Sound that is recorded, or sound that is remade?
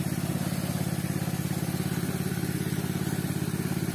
recorded